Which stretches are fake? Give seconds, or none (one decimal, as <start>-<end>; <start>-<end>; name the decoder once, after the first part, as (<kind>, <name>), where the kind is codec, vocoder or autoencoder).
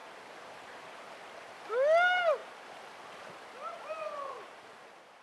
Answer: none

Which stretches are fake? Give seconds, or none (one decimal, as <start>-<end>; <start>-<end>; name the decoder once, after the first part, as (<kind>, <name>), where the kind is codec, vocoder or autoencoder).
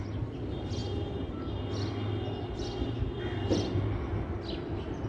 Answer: none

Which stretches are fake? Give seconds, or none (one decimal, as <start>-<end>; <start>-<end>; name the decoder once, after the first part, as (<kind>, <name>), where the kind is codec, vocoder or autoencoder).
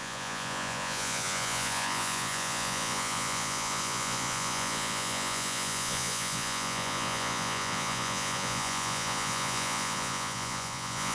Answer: 0.0-11.1 (vocoder, Vocos)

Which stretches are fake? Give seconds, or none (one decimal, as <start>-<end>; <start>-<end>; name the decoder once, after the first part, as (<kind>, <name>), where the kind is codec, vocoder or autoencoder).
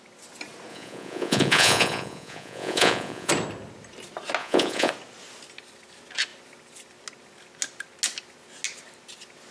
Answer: 0.7-3.3 (vocoder, Vocos); 4.4-4.9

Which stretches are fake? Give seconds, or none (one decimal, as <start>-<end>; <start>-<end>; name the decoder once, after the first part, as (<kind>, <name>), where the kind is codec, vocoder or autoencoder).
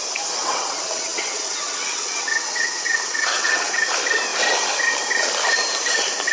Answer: 0.4-3.7 (vocoder, WaveNeXt)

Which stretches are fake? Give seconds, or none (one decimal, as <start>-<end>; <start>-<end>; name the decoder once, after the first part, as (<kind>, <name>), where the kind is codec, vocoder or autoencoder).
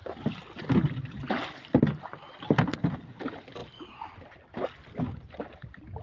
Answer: none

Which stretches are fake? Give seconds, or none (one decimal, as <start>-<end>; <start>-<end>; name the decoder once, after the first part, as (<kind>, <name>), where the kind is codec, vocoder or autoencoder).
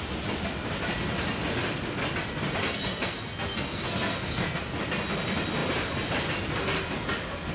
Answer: 2.6-4.6 (codec, SNAC)